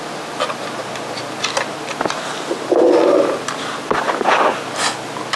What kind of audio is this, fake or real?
real